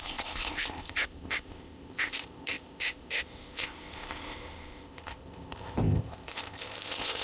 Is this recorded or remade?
remade